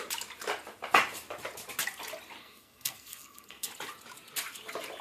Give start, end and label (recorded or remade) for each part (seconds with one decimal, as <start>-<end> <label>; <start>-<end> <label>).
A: 0.0-2.4 recorded; 2.4-3.7 remade; 3.7-5.0 recorded